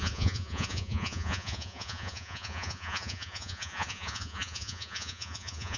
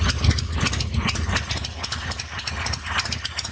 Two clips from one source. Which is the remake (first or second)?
first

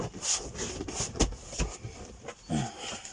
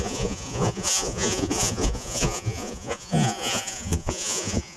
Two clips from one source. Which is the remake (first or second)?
second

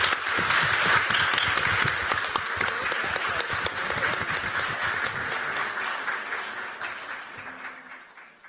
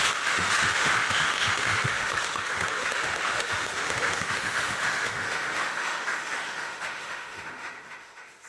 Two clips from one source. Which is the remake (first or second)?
second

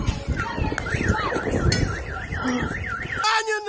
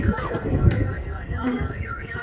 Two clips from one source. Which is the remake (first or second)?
second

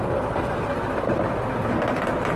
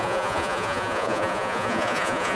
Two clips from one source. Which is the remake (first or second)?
second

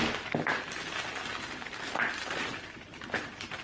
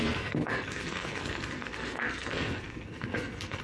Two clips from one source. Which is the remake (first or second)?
second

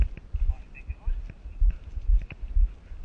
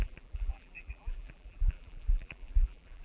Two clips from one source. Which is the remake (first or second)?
second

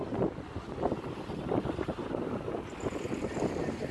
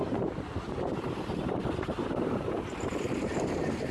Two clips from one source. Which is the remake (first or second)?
second